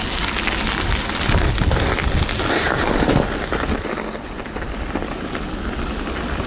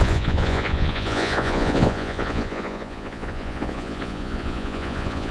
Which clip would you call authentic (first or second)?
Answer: first